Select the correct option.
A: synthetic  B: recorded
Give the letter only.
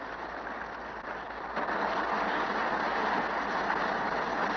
B